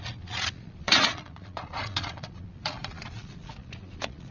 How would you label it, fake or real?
fake